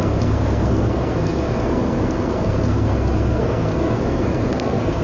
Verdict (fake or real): fake